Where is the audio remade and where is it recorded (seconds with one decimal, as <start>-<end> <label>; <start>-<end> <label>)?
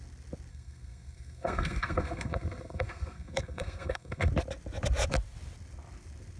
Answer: 0.0-0.5 recorded; 0.5-4.3 remade; 4.3-6.4 recorded